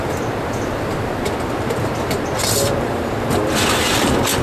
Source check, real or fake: fake